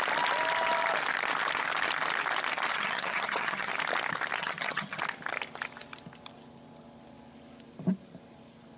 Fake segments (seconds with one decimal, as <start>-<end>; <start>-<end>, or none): 2.7-3.7; 4.4-5.0